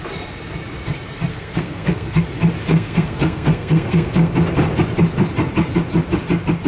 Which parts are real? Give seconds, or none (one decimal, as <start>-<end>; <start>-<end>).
0.0-1.3; 2.2-2.7; 4.3-6.7